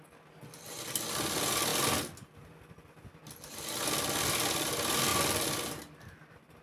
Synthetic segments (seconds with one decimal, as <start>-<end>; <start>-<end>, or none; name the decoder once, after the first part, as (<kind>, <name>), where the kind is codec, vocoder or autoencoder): none